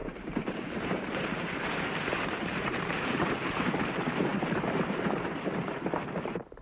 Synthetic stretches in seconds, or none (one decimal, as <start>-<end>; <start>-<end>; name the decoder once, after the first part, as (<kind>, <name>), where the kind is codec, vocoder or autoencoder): 0.0-6.6 (vocoder, BigVGAN v2)